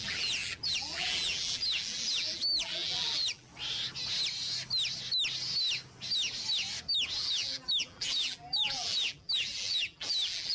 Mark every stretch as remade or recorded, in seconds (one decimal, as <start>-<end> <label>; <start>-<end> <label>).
0.0-3.5 remade; 3.5-7.2 recorded; 7.2-10.5 remade